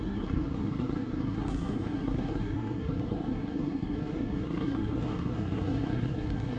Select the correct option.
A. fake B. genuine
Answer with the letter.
A